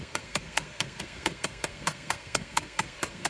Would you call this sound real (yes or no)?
no